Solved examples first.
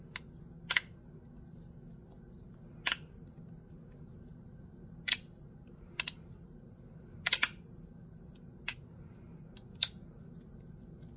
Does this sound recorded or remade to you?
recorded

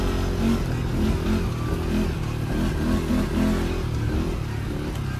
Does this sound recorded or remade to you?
recorded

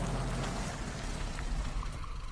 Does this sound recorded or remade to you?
recorded